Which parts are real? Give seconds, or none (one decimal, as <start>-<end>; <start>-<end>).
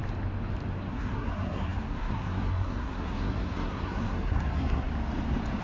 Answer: 0.0-0.9; 4.9-5.6